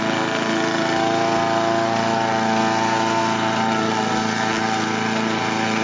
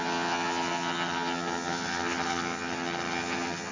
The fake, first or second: second